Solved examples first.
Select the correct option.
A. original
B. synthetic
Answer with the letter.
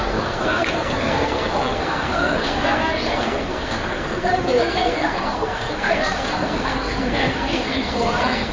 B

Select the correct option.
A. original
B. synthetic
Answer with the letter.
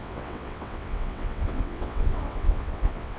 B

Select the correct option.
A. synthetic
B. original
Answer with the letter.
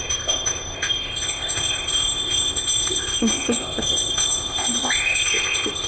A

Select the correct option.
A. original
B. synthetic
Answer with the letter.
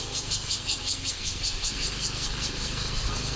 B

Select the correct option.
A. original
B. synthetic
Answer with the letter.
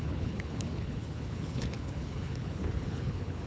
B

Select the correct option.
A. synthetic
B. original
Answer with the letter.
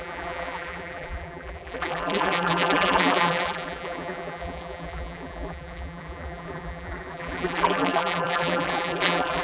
A